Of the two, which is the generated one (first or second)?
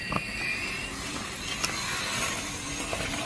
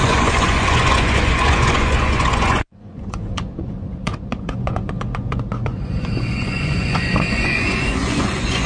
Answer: second